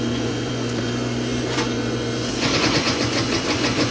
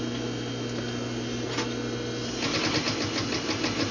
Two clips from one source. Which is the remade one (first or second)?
first